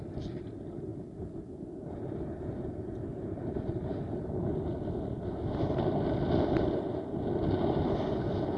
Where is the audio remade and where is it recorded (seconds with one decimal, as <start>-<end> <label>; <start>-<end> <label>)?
0.0-3.1 recorded; 3.1-4.0 remade; 4.0-8.6 recorded

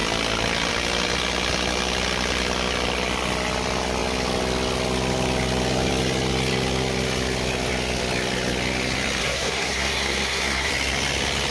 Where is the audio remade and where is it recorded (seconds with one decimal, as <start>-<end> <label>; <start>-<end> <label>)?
0.0-9.2 recorded; 9.2-10.7 remade; 10.7-11.5 recorded

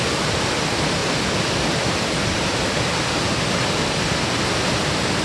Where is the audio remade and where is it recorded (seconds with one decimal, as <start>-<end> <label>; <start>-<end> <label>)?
0.0-5.2 recorded

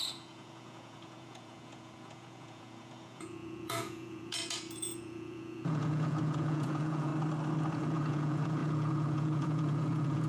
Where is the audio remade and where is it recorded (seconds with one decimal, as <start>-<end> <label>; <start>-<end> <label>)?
0.0-7.1 remade; 7.1-7.7 recorded; 7.7-10.3 remade

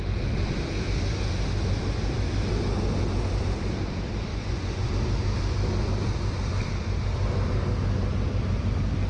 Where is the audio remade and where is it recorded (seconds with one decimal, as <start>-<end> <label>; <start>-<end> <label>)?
0.0-4.3 recorded; 4.3-4.9 remade; 4.9-9.1 recorded

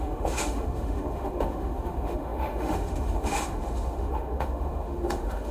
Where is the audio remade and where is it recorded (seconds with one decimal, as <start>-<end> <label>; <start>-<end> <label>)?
0.0-5.5 remade